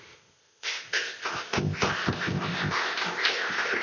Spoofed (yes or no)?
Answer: yes